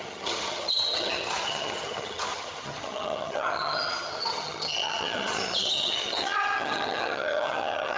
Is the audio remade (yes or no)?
yes